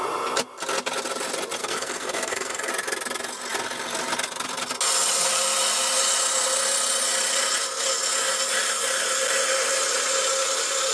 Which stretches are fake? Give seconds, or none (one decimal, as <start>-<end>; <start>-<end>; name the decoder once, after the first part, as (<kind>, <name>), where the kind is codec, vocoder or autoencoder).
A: 1.6-2.7 (codec, SNAC)